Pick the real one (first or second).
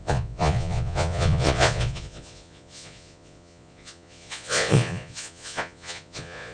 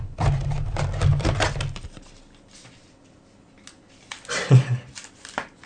second